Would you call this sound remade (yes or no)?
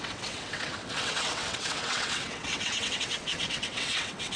yes